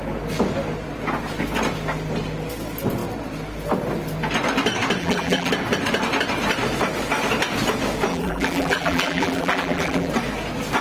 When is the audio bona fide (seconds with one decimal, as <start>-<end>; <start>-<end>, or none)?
0.0-5.0; 5.5-8.1; 10.1-10.8